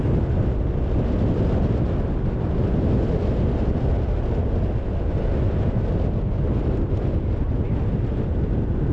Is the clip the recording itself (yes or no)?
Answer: yes